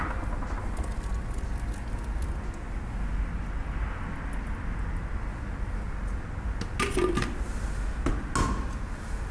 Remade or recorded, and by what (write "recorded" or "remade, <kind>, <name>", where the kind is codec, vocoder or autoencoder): recorded